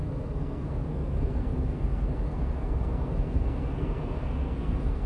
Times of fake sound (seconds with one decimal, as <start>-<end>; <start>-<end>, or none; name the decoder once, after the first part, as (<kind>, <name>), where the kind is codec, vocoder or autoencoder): 0.0-5.1 (codec, SNAC)